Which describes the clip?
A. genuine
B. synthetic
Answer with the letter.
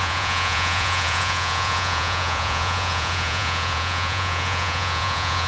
B